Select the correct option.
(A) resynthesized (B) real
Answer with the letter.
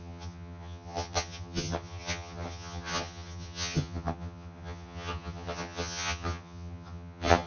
A